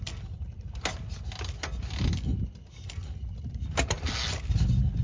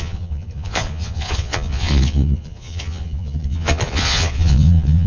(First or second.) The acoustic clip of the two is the first